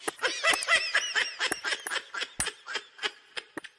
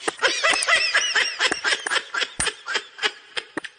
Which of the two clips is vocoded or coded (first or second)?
second